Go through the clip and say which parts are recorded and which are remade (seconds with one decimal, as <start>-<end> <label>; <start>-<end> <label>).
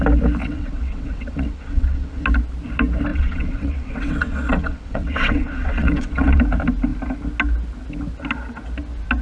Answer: 0.0-0.4 recorded; 0.4-2.2 remade; 2.2-3.1 recorded; 3.1-6.4 remade; 6.4-9.2 recorded